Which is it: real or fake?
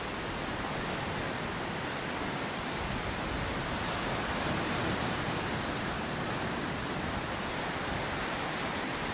real